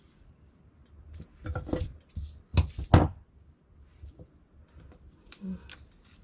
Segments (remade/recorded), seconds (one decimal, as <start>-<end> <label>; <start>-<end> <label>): 0.0-6.2 recorded